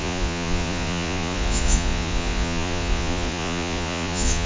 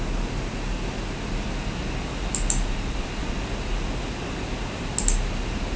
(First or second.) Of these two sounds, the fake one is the first